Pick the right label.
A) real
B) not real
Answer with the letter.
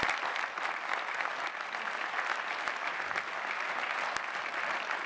A